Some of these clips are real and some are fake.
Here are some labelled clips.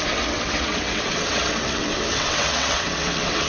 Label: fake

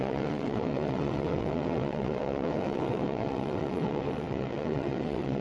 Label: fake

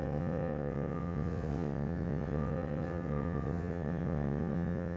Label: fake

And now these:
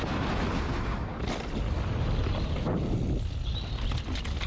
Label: real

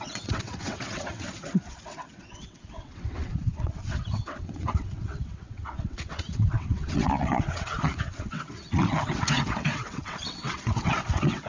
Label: fake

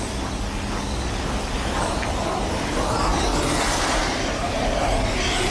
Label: real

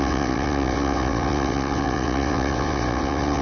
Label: fake